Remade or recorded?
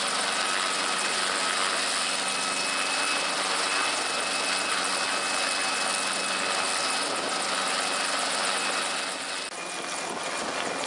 recorded